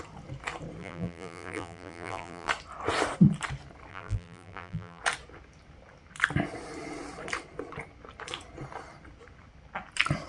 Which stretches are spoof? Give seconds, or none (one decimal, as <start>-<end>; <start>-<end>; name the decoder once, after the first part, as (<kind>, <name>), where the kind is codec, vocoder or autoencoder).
0.8-2.5 (vocoder, BigVGAN v2); 3.9-5.0

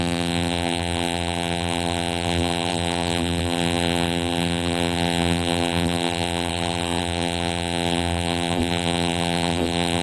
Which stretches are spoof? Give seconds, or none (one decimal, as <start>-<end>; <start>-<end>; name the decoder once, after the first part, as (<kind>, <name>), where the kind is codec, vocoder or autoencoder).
0.0-10.0 (vocoder, BigVGAN v2)

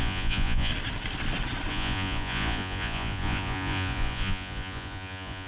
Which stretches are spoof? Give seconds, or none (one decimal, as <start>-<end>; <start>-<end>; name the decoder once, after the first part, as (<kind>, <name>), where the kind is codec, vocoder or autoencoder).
0.0-0.7 (vocoder, Vocos); 1.7-5.5

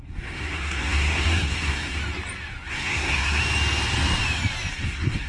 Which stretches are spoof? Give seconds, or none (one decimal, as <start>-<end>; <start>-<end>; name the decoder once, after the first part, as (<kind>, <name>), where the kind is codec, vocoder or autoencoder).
0.0-2.0 (codec, SNAC); 2.7-3.4; 4.7-5.3

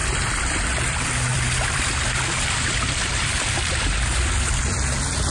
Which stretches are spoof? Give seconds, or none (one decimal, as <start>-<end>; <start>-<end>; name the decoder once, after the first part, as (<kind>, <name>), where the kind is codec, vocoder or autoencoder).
1.3-4.3 (vocoder, BigVGAN v2)